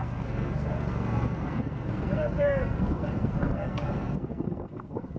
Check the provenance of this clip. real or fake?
fake